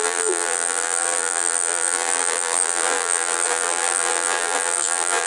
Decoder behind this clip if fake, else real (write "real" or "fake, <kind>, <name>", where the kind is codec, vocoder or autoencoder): fake, vocoder, BigVGAN v2